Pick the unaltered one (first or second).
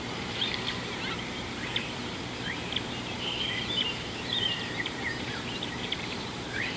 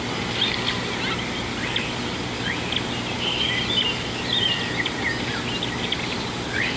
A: second